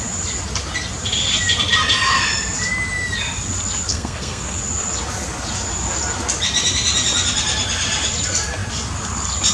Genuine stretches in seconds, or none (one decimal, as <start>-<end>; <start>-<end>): 0.0-3.9; 4.6-9.5